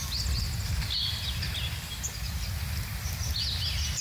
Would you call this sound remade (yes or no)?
no